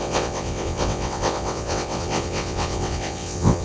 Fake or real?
fake